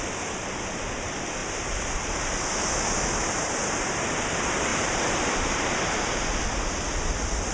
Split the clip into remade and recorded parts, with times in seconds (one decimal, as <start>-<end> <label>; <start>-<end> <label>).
0.0-4.7 recorded; 4.7-6.0 remade; 6.0-7.5 recorded